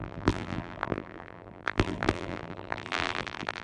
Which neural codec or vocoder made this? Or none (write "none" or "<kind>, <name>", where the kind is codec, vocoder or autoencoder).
vocoder, BigVGAN v2